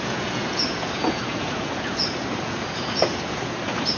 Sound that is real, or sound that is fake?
fake